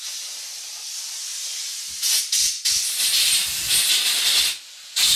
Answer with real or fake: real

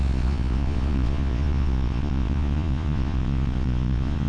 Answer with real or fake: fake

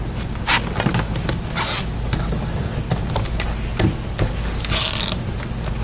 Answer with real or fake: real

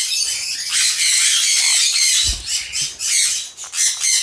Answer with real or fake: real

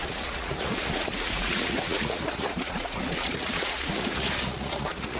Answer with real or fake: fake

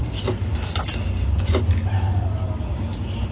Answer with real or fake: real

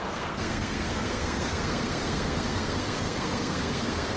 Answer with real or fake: fake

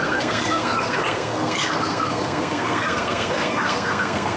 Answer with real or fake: fake